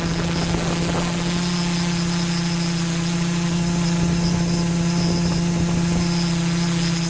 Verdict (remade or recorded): recorded